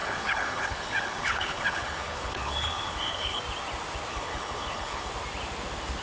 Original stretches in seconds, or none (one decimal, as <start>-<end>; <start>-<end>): 3.4-4.1; 5.1-6.0